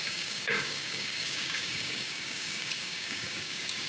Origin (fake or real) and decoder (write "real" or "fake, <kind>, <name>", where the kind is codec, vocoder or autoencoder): fake, codec, DAC